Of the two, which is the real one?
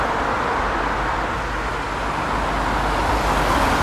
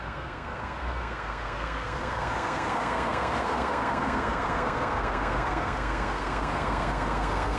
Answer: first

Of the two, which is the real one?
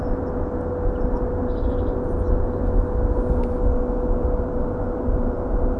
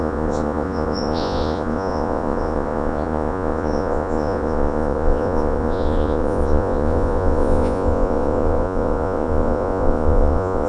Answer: first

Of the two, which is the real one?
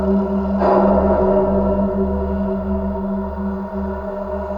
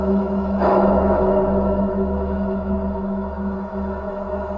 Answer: first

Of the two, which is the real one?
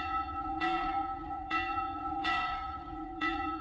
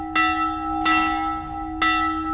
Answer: second